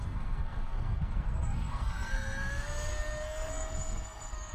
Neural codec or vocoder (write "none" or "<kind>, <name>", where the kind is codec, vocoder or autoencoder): codec, SNAC